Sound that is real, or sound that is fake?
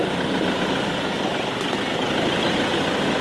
real